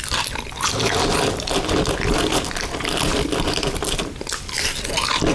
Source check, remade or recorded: recorded